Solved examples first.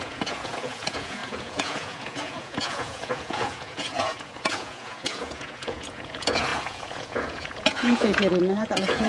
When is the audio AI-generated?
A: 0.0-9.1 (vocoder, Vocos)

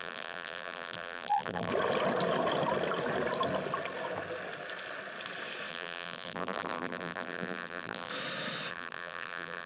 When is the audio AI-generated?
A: 0.0-1.7 (vocoder, BigVGAN v2); 5.7-8.1; 8.7-9.7